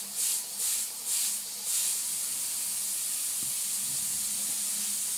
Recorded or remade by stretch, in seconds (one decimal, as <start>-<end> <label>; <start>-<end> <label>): 0.0-5.2 recorded